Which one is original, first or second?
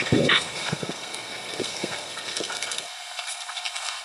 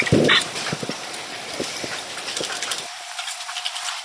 second